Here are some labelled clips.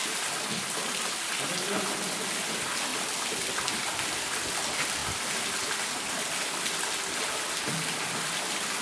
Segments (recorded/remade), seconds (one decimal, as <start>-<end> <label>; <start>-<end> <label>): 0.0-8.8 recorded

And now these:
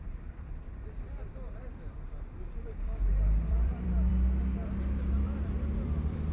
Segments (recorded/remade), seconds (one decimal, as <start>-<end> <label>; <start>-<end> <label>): 0.0-4.6 remade; 4.6-5.1 recorded; 5.1-6.3 remade

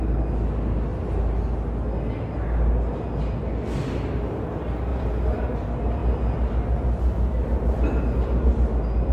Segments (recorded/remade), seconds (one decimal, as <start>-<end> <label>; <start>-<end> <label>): 0.0-4.9 recorded; 4.9-5.5 remade; 5.5-9.1 recorded

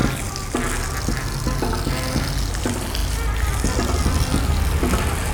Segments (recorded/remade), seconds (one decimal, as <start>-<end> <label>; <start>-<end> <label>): 0.0-5.3 recorded

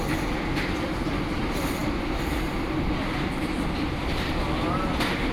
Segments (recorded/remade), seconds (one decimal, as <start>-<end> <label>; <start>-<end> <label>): 0.0-1.8 recorded; 1.8-4.4 remade; 4.4-5.3 recorded